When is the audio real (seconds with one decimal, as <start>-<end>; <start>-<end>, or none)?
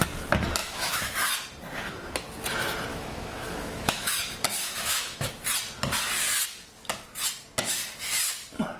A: 0.0-0.6; 1.3-2.9; 4.1-4.5; 5.3-8.8